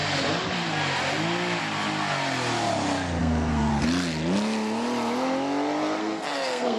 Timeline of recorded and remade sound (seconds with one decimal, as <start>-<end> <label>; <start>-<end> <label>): 0.0-3.2 recorded; 3.2-3.7 remade; 3.7-6.0 recorded; 6.0-6.8 remade